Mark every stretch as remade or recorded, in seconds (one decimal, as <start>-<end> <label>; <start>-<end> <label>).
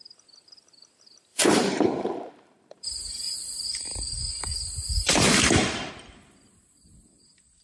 0.0-1.3 recorded; 1.3-5.9 remade; 5.9-7.6 recorded